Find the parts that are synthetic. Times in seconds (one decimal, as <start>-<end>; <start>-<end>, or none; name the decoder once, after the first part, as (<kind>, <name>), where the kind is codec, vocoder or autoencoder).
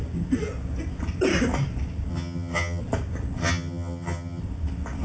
2.1-2.8 (vocoder, HiFi-GAN); 3.4-4.4